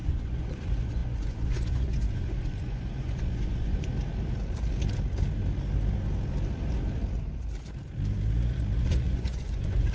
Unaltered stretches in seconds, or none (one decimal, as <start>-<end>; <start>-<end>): 3.9-8.8